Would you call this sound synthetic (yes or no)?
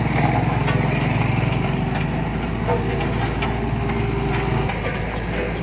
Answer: no